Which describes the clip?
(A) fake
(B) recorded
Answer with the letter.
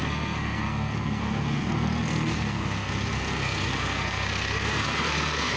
A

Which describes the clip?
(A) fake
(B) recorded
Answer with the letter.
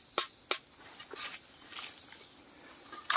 B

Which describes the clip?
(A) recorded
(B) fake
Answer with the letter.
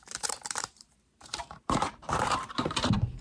B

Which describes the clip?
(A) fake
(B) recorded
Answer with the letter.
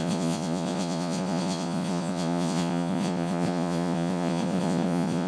A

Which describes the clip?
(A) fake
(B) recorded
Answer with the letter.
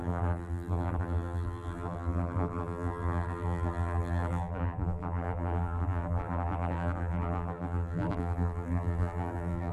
A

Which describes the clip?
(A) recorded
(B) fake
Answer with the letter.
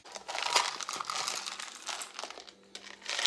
A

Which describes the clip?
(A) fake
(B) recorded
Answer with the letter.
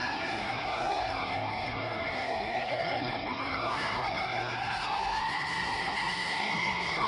A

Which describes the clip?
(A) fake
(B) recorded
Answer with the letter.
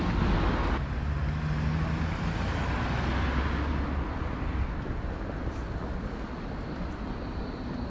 B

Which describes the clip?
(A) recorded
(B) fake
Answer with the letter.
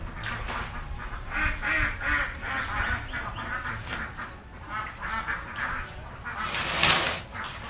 A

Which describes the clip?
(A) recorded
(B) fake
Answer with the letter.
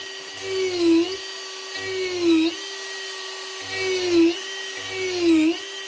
A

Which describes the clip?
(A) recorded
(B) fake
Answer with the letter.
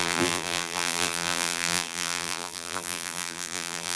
B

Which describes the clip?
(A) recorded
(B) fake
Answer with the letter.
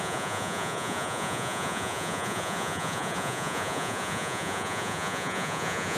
B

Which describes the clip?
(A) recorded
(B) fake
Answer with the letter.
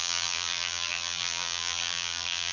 B